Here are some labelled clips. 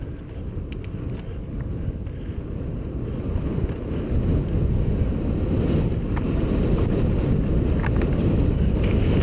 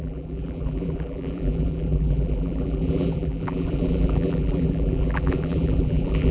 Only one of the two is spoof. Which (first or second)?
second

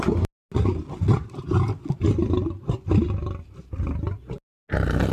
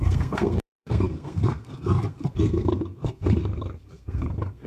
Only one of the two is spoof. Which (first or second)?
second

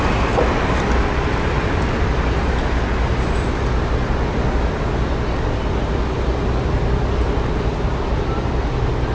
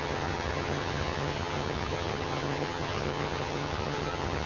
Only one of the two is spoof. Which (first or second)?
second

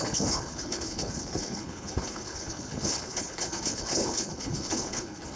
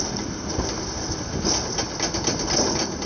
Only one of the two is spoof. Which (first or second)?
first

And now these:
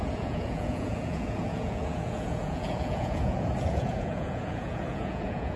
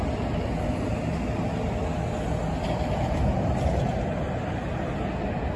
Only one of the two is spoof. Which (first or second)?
first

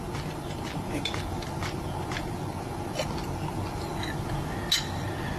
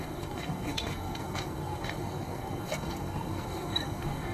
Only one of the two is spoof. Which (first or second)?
second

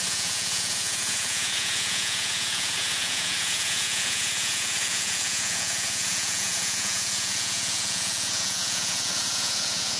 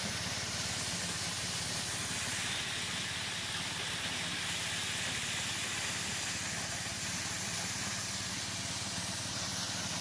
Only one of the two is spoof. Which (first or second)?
first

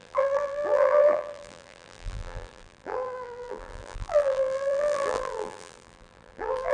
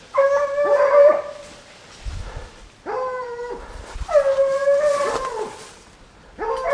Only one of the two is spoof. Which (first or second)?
first